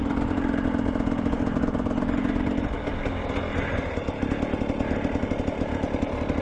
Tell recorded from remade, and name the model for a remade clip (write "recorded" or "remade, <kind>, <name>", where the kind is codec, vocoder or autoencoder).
recorded